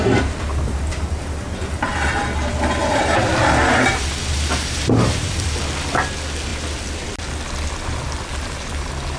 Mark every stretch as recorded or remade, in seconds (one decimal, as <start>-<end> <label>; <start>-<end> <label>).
0.0-0.5 recorded; 0.5-1.8 remade; 1.8-2.8 recorded; 2.8-5.6 remade; 5.6-8.3 recorded; 8.3-9.2 remade